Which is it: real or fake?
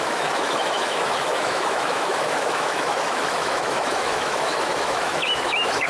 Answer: fake